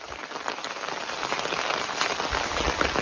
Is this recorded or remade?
recorded